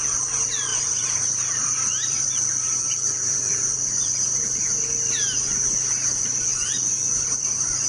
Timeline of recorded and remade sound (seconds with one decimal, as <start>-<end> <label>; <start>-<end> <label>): 0.0-0.7 recorded; 0.7-4.4 remade; 4.4-6.5 recorded; 6.5-7.9 remade